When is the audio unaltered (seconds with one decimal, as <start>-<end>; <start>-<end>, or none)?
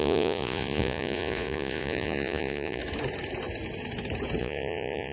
2.8-4.4